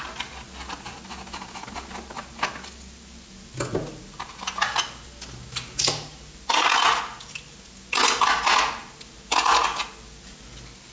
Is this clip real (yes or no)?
yes